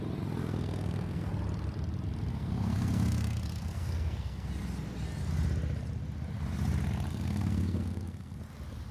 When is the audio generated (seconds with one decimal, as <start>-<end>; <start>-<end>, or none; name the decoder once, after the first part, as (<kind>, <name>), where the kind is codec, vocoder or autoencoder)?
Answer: 0.4-1.3 (codec, SNAC); 2.3-4.5; 7.1-8.4